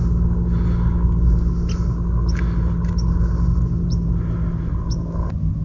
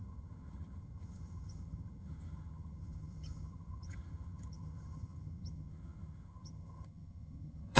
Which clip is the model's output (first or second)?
second